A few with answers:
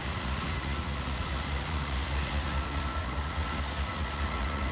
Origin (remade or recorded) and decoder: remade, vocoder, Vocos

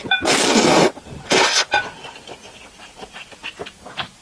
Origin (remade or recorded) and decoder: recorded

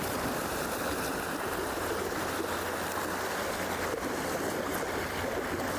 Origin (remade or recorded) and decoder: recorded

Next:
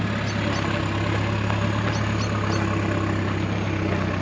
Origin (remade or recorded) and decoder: recorded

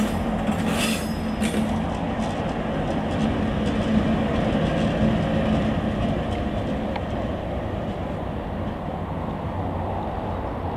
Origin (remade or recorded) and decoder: recorded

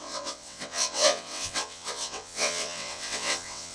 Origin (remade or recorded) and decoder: remade, vocoder, WaveNeXt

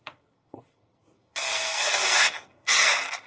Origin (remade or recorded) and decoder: remade, codec, SNAC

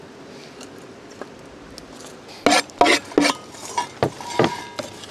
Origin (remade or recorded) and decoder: recorded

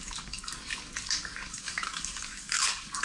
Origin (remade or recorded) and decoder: remade, codec, DAC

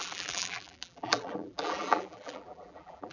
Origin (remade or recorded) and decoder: remade, vocoder, BigVGAN v2